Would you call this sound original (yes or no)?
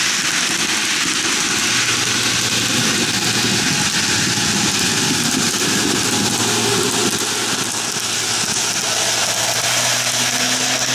yes